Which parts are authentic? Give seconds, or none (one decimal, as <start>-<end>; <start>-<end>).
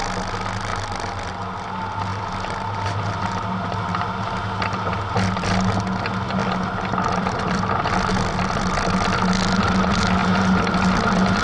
0.0-0.7; 1.3-6.4; 8.5-10.2; 10.8-11.4